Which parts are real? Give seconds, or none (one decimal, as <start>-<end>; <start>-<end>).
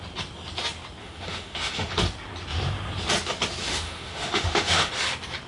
0.0-1.0; 1.9-3.6; 4.9-5.5